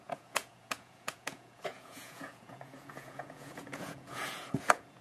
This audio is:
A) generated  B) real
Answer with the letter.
A